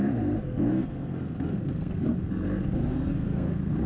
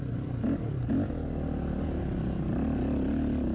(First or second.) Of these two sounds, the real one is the second